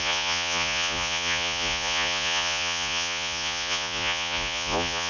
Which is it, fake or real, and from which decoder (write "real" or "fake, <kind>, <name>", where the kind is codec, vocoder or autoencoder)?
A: fake, vocoder, Vocos